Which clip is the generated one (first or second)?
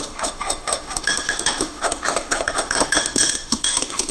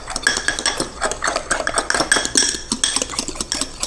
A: first